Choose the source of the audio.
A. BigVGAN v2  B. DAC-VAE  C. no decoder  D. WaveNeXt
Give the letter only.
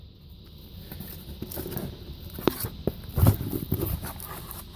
C